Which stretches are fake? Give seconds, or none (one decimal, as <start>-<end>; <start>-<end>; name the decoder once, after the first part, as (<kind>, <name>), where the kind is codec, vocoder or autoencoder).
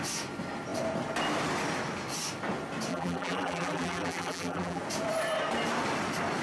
2.9-4.8 (vocoder, BigVGAN v2)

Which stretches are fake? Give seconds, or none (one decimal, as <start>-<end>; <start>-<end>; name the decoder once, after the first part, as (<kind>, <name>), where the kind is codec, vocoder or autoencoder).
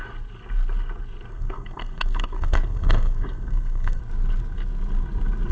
1.3-4.0 (codec, SNAC)